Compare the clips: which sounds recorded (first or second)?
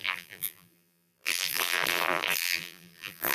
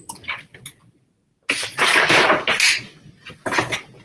second